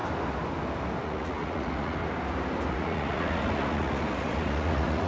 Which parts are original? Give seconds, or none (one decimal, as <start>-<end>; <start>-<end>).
0.0-1.0; 2.0-2.7